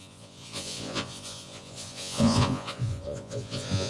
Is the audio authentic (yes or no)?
no